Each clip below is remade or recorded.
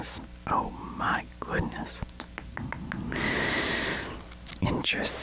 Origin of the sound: recorded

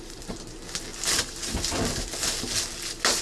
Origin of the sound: recorded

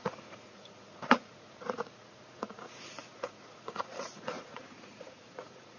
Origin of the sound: remade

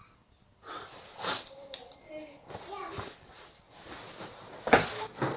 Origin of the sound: recorded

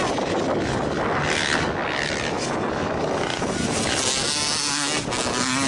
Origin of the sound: recorded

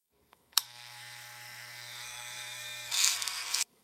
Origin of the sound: remade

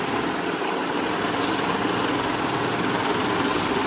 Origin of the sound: recorded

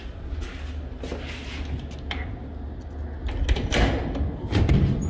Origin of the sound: recorded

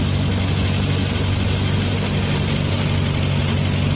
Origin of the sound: recorded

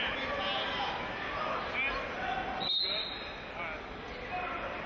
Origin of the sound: recorded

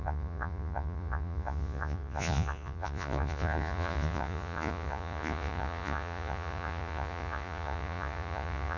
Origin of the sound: remade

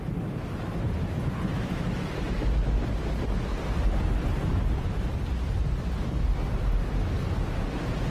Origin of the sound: recorded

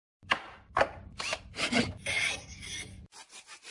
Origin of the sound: recorded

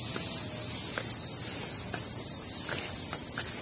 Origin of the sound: recorded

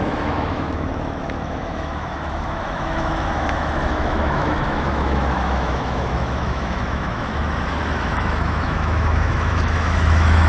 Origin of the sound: remade